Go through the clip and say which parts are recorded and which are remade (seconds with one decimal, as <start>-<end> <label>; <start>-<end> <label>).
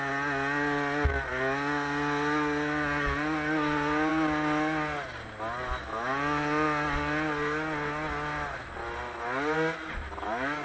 0.0-10.6 recorded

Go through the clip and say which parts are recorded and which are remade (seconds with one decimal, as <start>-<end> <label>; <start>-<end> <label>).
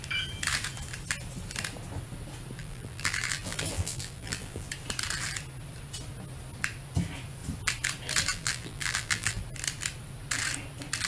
0.0-2.6 recorded; 2.6-4.7 remade; 4.7-8.3 recorded; 8.3-9.4 remade; 9.4-11.1 recorded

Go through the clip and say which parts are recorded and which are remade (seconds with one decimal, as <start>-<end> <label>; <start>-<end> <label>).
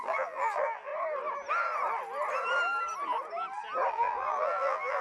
0.0-0.9 remade; 0.9-3.9 recorded; 3.9-5.0 remade